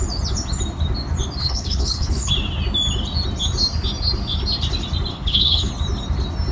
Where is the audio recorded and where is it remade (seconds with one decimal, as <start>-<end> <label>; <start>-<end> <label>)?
0.0-1.4 recorded; 1.4-2.3 remade; 2.3-5.1 recorded; 5.1-5.7 remade; 5.7-6.5 recorded